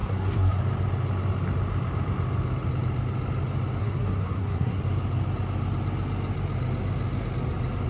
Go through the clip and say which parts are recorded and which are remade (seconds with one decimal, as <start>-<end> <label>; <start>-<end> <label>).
0.0-0.6 remade; 0.6-3.8 recorded; 3.8-4.8 remade; 4.8-7.9 recorded